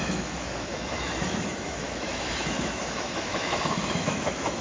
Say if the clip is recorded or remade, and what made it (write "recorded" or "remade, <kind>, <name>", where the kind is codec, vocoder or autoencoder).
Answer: remade, autoencoder, DAC-VAE